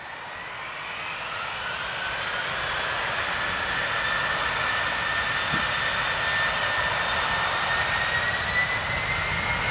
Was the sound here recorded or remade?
recorded